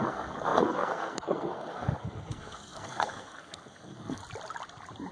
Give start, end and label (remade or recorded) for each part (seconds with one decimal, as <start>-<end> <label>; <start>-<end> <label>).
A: 0.0-4.2 remade; 4.2-5.1 recorded